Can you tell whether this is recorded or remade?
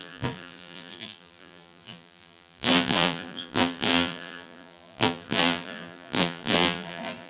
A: remade